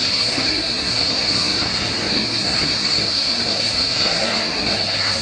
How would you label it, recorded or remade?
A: remade